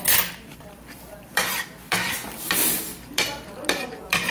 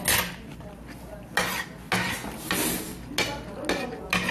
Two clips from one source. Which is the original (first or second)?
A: second